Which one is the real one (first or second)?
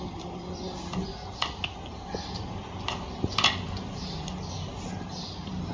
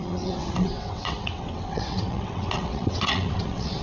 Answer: first